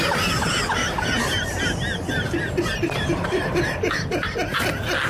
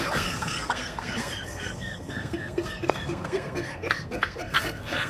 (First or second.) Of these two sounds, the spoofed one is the second